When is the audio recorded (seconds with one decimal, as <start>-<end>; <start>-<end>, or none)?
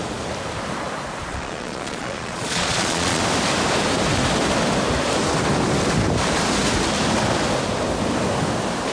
0.0-1.3; 3.2-8.9